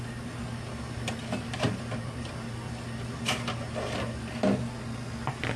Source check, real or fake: real